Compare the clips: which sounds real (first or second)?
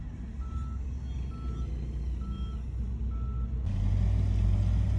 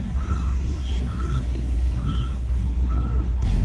first